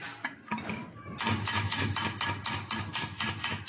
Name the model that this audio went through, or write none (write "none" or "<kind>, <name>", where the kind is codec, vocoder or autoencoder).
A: none